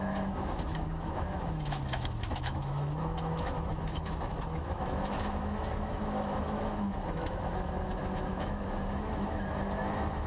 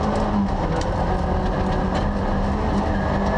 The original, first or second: second